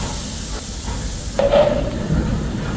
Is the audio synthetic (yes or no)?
no